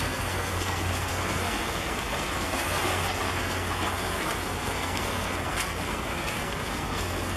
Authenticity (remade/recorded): remade